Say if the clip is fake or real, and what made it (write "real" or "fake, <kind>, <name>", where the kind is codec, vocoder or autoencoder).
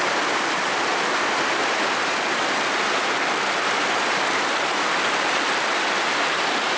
real